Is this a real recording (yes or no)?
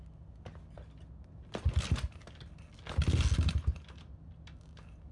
yes